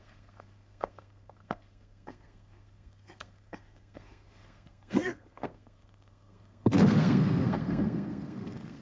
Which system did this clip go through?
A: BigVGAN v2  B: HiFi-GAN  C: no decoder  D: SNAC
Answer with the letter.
D